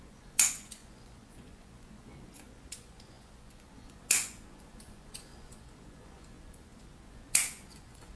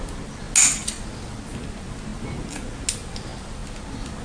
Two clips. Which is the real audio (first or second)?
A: second